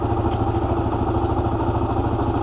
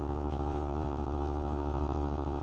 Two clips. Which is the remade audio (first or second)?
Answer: second